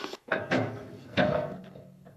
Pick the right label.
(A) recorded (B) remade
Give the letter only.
B